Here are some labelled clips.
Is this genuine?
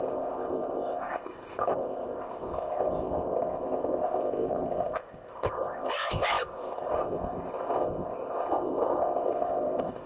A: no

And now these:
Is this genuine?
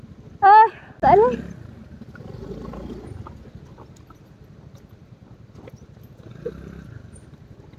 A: yes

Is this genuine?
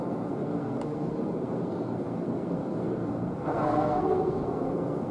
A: no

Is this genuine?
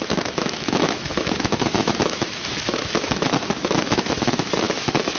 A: no